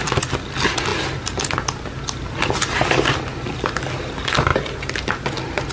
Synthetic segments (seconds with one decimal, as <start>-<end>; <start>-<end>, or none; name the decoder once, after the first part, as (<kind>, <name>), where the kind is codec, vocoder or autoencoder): none

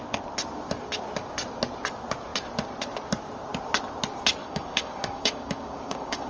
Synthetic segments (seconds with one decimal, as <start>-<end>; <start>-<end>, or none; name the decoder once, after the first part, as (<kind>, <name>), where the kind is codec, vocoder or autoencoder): 4.4-6.3 (codec, DAC)